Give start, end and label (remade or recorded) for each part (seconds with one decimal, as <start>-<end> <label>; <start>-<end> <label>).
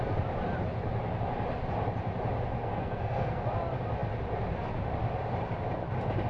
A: 0.0-2.6 recorded; 2.6-3.4 remade; 3.4-6.3 recorded